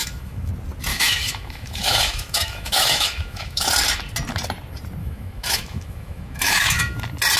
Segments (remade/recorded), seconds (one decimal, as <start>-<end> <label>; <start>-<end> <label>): 0.0-0.5 remade; 0.5-0.9 recorded; 0.9-3.7 remade; 3.7-5.0 recorded; 5.0-7.0 remade; 7.0-7.4 recorded